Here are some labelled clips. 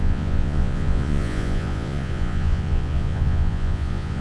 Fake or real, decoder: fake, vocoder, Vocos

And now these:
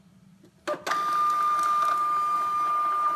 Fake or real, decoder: real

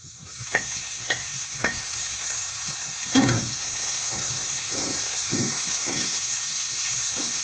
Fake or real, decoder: fake, codec, SNAC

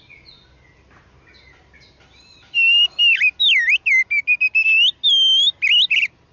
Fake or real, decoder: real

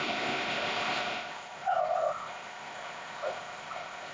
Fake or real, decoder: fake, codec, ZipCodec